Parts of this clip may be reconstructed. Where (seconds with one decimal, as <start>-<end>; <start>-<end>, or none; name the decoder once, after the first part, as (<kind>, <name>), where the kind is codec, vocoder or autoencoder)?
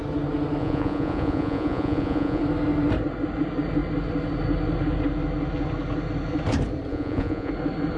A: 0.6-2.4 (vocoder, Vocos); 6.9-7.5